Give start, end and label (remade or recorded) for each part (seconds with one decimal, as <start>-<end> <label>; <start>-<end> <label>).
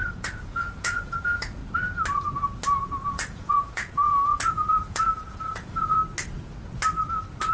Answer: 0.0-1.6 remade; 1.6-3.1 recorded; 3.1-6.0 remade; 6.0-7.5 recorded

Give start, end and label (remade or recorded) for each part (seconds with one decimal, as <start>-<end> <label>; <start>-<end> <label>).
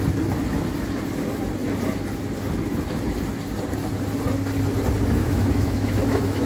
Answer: 0.0-5.2 recorded; 5.2-6.5 remade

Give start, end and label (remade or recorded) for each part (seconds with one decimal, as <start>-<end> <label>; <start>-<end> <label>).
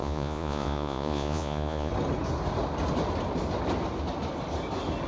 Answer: 0.0-1.9 remade; 1.9-5.1 recorded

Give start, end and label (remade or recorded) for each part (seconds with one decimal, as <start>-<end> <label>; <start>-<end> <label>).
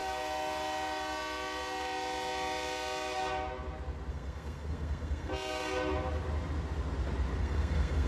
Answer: 0.0-4.1 recorded; 4.1-5.3 remade; 5.3-7.4 recorded; 7.4-8.1 remade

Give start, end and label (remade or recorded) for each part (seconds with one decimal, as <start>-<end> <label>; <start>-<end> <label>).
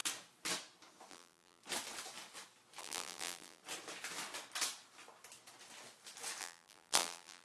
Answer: 0.0-1.1 recorded; 1.1-1.6 remade; 1.6-2.8 recorded; 2.8-3.6 remade; 3.6-6.4 recorded; 6.4-7.4 remade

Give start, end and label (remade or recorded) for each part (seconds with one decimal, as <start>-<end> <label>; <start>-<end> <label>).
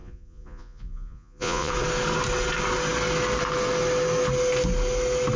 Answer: 0.0-1.7 remade; 1.7-5.4 recorded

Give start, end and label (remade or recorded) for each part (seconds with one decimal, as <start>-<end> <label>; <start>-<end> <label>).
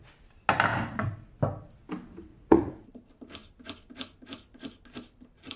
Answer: 0.0-2.3 recorded; 2.3-2.9 remade; 2.9-5.6 recorded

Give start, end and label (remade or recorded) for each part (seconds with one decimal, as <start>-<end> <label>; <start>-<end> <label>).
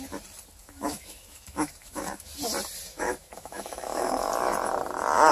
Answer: 0.0-0.6 recorded; 0.6-2.3 remade; 2.3-2.9 recorded; 2.9-4.3 remade; 4.3-5.3 recorded